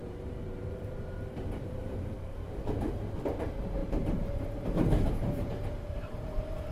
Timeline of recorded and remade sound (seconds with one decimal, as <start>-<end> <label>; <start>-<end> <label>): 0.0-2.8 remade; 2.8-3.8 recorded; 3.8-6.7 remade